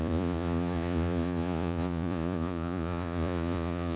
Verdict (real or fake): fake